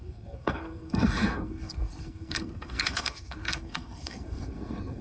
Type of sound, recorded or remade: remade